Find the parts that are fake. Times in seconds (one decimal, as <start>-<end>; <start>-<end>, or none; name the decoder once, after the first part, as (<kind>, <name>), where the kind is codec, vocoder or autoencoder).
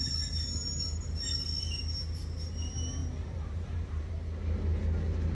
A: 3.0-4.1 (vocoder, BigVGAN v2)